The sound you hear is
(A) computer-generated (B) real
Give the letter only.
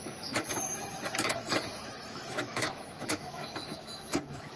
A